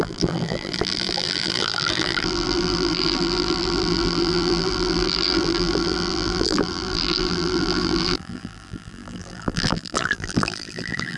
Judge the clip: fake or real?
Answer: fake